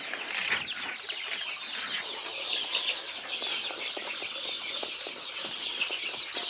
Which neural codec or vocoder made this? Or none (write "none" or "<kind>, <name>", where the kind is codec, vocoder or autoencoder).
none